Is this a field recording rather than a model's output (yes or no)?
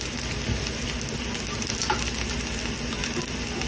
yes